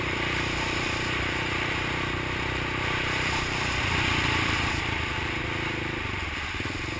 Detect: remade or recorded remade